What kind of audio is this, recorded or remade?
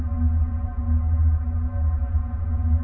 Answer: recorded